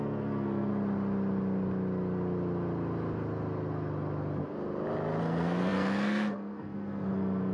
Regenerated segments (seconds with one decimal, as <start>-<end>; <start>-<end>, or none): 0.0-0.7; 5.2-7.5